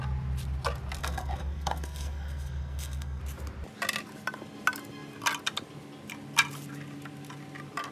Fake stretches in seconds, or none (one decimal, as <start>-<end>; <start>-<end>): 1.0-3.2